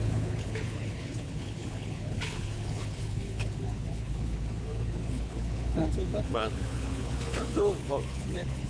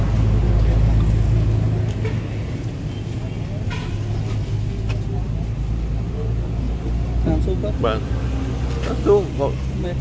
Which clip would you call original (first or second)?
second